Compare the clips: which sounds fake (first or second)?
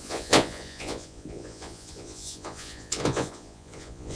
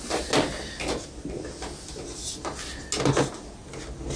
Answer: first